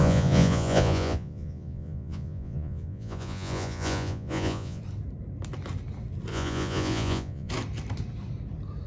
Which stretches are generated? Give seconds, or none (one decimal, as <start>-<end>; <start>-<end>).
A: 0.0-4.8; 6.3-7.5